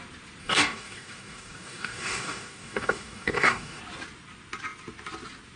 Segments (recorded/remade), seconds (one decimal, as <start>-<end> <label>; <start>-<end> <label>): 0.0-0.4 recorded; 0.4-3.8 remade; 3.8-5.6 recorded

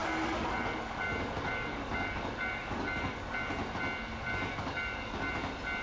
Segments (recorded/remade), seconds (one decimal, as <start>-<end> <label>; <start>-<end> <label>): 0.0-3.5 remade; 3.5-4.3 recorded; 4.3-5.3 remade; 5.3-5.8 recorded

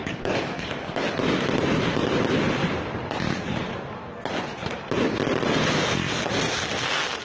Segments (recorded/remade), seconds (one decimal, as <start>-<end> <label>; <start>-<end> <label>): 0.0-1.0 remade; 1.0-7.2 recorded

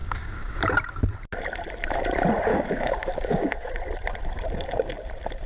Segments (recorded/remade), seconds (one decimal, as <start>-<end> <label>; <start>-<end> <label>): 0.0-0.6 remade; 0.6-2.5 recorded; 2.5-3.7 remade; 3.7-5.5 recorded

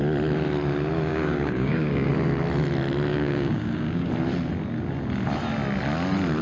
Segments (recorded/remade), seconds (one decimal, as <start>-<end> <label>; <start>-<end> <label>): 0.0-1.1 recorded; 1.1-2.1 remade; 2.1-3.1 recorded; 3.1-4.1 remade; 4.1-6.4 recorded

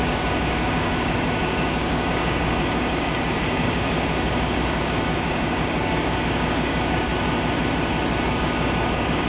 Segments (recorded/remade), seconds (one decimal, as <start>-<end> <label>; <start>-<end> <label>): 0.0-7.1 remade; 7.1-8.3 recorded; 8.3-9.3 remade

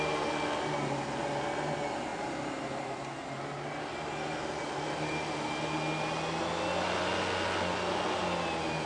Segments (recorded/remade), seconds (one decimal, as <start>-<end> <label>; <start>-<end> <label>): 0.0-8.9 recorded